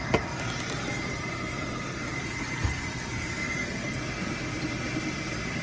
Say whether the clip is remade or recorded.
recorded